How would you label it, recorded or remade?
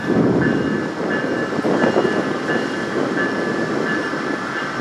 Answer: remade